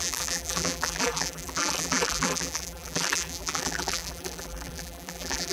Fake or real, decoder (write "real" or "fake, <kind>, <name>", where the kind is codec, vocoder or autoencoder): fake, vocoder, BigVGAN v2